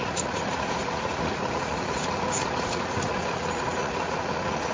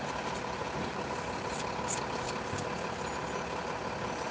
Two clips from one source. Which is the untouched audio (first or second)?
second